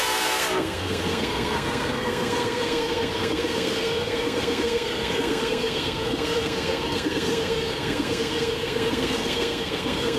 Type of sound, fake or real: fake